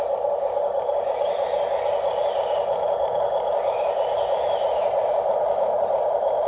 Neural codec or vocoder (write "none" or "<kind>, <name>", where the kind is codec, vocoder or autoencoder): none